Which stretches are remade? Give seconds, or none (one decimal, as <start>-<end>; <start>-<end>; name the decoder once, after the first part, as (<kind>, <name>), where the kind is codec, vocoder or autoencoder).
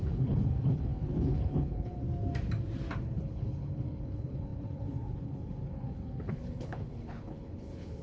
0.0-2.0 (codec, HILCodec); 3.0-8.0